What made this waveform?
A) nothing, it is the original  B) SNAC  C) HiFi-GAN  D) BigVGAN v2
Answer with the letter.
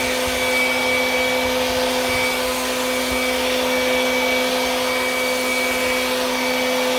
A